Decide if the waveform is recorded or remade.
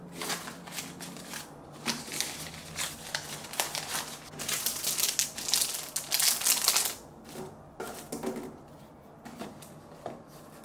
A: recorded